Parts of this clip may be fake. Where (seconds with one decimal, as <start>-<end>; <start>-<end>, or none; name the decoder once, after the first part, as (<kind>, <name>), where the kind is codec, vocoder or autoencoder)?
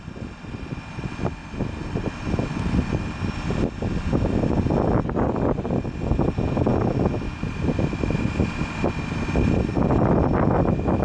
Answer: 1.4-2.9 (vocoder, BigVGAN v2)